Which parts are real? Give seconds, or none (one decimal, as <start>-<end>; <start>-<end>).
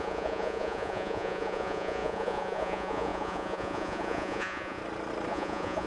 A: 4.8-5.3